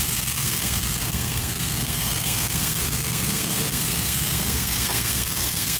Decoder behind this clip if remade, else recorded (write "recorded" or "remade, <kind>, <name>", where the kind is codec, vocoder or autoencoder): remade, codec, SNAC